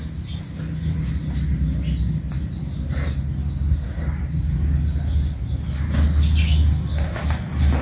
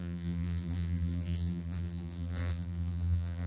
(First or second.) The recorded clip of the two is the first